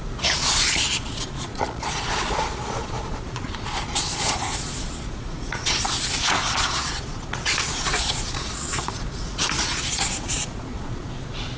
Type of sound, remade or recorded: remade